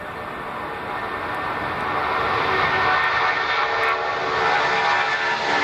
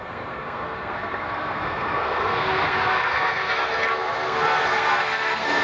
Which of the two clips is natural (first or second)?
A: first